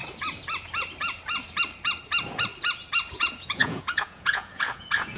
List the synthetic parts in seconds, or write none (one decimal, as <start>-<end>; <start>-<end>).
3.1-5.2